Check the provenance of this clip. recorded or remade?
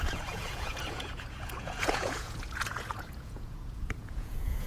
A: remade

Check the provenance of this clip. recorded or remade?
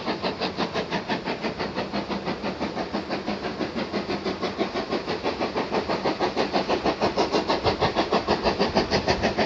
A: recorded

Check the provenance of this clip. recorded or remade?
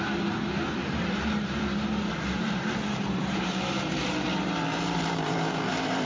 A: remade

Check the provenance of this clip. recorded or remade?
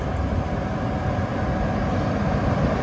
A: recorded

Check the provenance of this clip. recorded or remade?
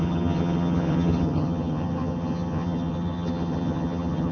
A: remade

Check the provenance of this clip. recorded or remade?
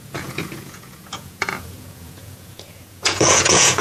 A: remade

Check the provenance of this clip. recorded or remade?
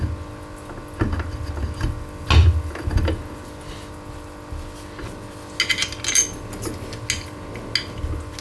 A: recorded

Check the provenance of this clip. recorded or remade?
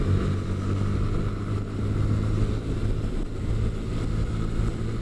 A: recorded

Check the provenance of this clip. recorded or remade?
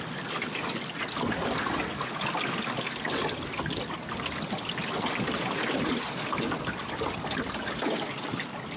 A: recorded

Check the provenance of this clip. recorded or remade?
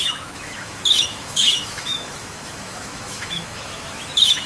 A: remade